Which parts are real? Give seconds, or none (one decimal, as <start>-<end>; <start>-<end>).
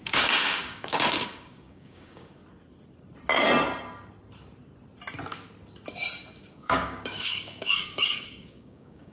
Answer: 2.4-6.5